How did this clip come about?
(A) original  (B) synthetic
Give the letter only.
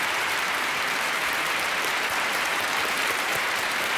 B